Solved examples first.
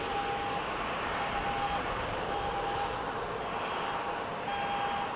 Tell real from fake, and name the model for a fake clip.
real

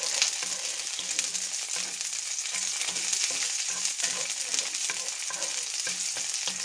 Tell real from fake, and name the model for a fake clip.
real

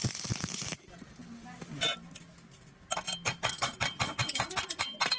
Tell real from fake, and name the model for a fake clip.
real